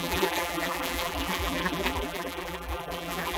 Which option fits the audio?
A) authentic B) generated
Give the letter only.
B